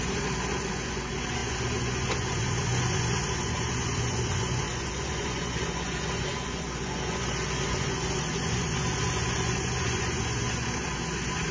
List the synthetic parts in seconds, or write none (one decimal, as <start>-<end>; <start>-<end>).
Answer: 0.0-11.5